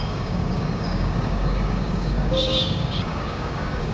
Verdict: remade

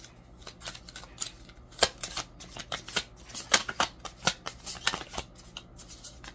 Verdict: recorded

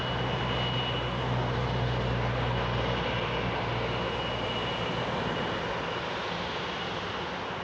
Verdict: recorded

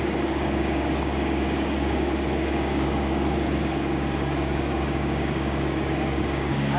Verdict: remade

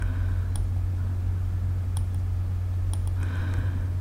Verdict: recorded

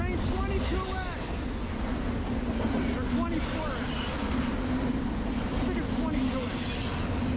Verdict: recorded